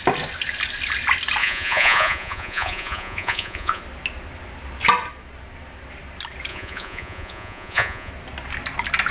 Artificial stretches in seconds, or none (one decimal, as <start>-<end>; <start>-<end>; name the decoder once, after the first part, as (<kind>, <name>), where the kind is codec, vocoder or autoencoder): 1.4-3.8 (vocoder, Vocos); 6.5-8.1